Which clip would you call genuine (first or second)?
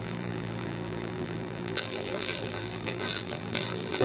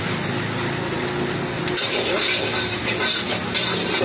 second